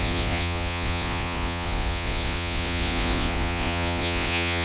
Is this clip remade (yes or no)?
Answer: yes